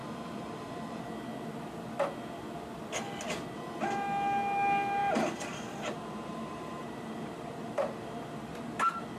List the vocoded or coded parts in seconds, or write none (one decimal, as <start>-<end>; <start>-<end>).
0.0-1.1; 5.0-8.2